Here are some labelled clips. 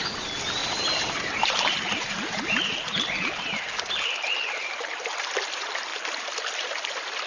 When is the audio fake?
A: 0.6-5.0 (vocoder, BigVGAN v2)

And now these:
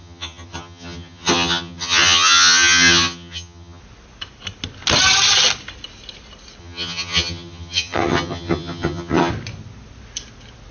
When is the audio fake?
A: 0.0-3.8 (vocoder, HiFi-GAN); 6.6-9.3